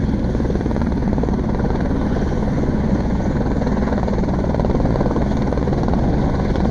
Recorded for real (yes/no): no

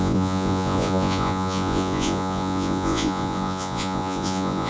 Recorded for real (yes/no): no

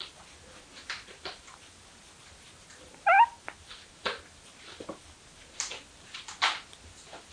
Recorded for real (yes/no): yes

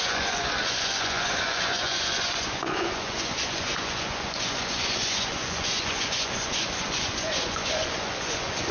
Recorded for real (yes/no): no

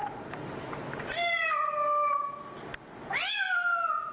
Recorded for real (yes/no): yes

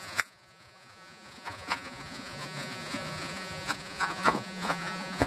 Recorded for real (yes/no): no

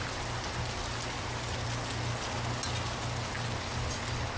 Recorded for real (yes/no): yes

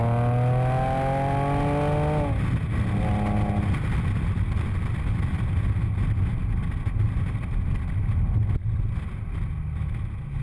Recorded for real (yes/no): yes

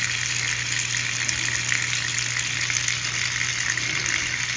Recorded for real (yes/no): yes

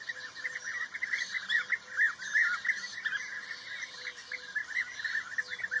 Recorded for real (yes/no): yes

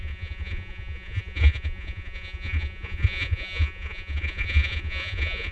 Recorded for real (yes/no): no